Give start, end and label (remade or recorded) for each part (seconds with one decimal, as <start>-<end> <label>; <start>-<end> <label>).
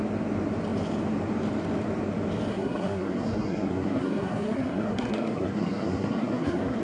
0.0-2.5 recorded; 2.5-6.8 remade